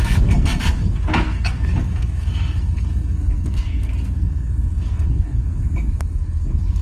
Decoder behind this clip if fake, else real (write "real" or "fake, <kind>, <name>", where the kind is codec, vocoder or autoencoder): fake, codec, SNAC